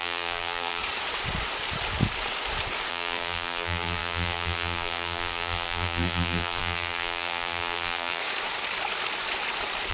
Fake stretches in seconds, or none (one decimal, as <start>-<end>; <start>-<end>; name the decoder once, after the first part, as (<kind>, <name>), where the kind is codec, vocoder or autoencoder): 0.0-0.8 (vocoder, BigVGAN v2); 2.9-8.2